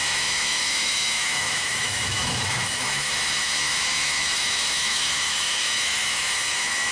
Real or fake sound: fake